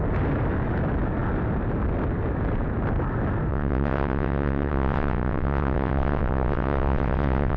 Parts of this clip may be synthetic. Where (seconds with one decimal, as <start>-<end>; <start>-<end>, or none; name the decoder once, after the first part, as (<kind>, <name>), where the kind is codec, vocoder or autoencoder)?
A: 3.5-7.6 (vocoder, WaveNeXt)